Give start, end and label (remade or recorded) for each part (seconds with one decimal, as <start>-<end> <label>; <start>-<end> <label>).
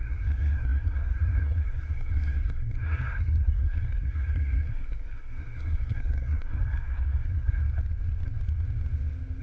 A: 0.0-7.6 remade; 7.6-9.4 recorded